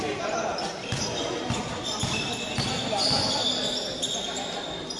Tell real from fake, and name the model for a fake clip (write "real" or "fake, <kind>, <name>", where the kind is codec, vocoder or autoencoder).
real